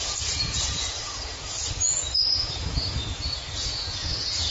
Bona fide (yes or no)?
no